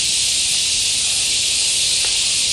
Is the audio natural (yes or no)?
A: yes